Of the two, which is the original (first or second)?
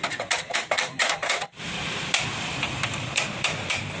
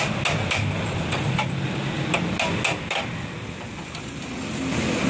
second